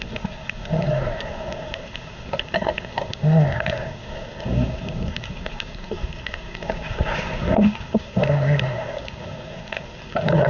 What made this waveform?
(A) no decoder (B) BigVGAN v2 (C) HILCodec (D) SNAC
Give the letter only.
D